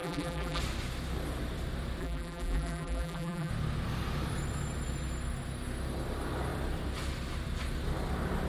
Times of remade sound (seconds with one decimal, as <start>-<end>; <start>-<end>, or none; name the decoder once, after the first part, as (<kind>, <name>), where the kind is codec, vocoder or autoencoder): 0.0-0.6 (vocoder, BigVGAN v2); 2.0-3.5